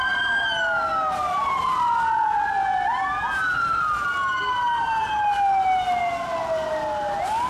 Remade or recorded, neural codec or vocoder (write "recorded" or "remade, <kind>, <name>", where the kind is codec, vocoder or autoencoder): recorded